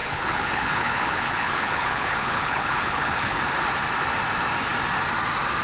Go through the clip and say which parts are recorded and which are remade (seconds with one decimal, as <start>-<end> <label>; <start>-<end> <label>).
0.0-3.4 remade; 3.4-5.6 recorded